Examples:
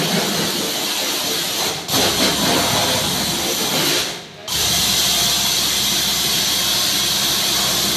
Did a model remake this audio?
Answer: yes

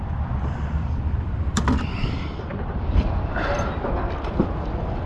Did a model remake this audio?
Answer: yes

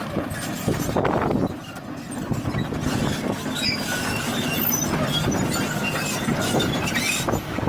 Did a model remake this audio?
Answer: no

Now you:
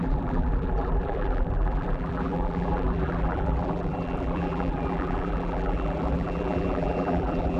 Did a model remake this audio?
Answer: yes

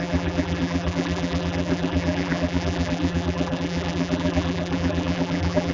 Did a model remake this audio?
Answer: yes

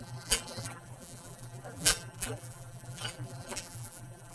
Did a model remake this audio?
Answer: yes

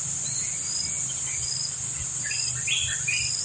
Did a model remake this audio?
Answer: no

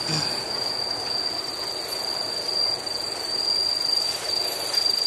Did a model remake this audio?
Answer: no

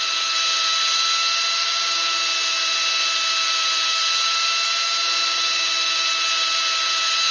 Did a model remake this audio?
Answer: no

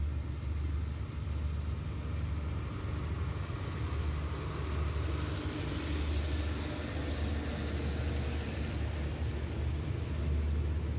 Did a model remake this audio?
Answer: no